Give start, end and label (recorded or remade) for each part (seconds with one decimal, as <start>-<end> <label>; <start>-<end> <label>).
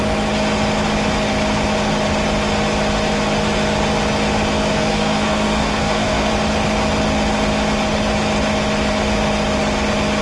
0.0-4.7 recorded; 4.7-6.3 remade; 6.3-10.2 recorded